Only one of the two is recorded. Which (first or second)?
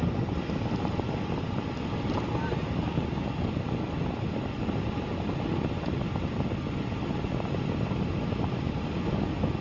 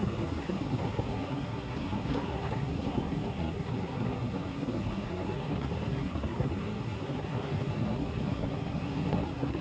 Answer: first